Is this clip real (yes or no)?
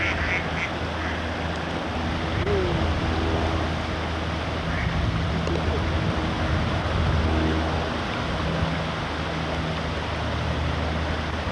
yes